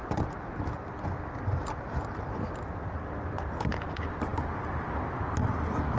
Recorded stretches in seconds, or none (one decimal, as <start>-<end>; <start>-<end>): 0.0-6.0